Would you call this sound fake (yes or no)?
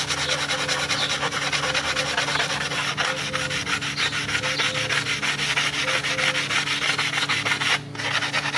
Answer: no